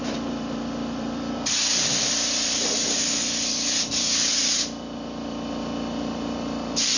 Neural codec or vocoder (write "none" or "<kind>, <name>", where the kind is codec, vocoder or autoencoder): vocoder, BigVGAN v2